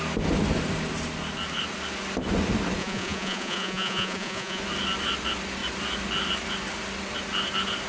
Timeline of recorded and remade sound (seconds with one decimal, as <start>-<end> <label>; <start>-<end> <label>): 0.0-2.8 recorded; 2.8-4.6 remade; 4.6-7.9 recorded